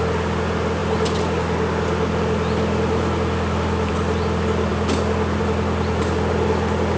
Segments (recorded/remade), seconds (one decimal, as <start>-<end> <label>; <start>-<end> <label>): 0.0-7.0 recorded

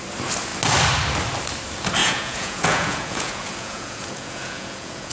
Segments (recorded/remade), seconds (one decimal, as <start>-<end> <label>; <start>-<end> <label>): 0.0-2.0 recorded; 2.0-5.1 remade

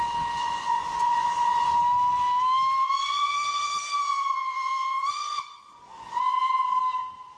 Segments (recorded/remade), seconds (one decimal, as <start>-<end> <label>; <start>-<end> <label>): 0.0-0.4 recorded; 0.4-1.8 remade; 1.8-2.8 recorded; 2.8-6.8 remade; 6.8-7.4 recorded

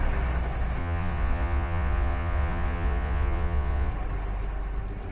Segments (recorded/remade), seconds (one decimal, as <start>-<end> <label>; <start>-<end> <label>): 0.0-0.8 recorded; 0.8-3.9 remade; 3.9-5.1 recorded

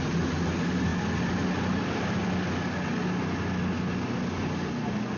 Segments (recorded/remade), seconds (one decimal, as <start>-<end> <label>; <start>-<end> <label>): 0.0-5.2 recorded